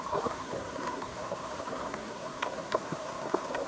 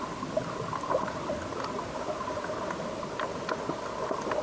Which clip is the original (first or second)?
second